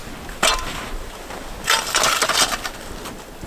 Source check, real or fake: real